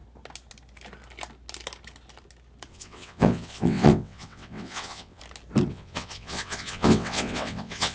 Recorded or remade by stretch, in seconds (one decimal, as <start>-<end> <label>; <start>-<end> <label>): 0.0-2.7 recorded; 2.7-5.2 remade; 5.2-5.7 recorded; 5.7-7.9 remade